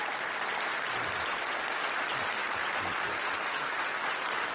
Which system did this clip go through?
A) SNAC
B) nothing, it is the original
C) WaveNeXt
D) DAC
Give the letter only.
B